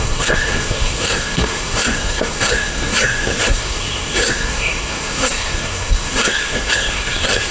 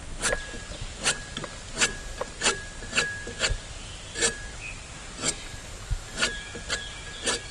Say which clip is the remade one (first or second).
first